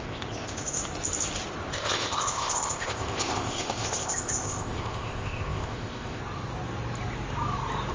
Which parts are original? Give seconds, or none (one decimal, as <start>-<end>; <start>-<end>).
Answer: 0.8-1.7; 6.2-7.9